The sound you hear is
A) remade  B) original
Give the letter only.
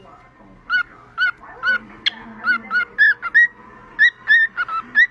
B